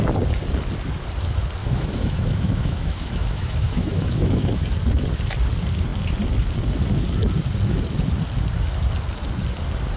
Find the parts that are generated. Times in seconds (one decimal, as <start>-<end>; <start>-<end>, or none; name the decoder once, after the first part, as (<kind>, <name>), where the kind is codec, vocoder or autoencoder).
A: 1.6-4.6 (autoencoder, DAC-VAE)